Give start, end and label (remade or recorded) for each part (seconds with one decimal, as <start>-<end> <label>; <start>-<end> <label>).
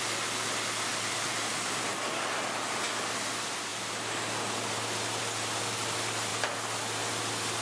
0.0-7.6 recorded